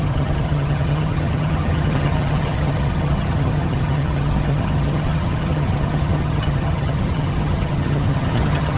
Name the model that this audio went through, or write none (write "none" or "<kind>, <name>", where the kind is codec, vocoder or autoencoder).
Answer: vocoder, HiFi-GAN